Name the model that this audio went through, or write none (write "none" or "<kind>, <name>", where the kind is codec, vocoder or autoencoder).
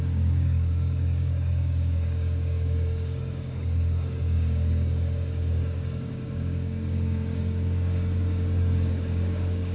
codec, DAC